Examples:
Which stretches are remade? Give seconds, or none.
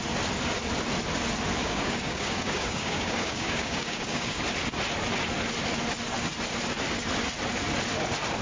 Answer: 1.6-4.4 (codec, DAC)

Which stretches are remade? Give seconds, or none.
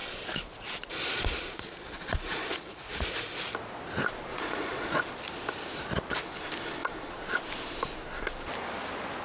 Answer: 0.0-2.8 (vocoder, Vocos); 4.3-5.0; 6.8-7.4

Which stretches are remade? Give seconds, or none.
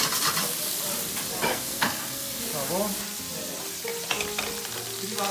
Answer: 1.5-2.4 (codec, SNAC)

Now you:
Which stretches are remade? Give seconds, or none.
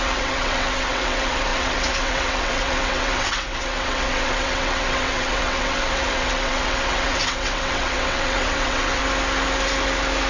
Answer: 0.0-9.0 (vocoder, WaveNeXt)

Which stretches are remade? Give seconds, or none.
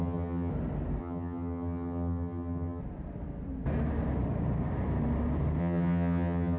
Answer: 0.0-0.5 (vocoder, HiFi-GAN); 1.0-2.8; 5.6-6.6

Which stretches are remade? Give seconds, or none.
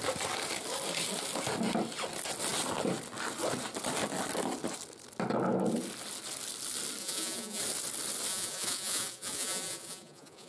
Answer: 7.0-7.6 (vocoder, Vocos); 8.3-10.5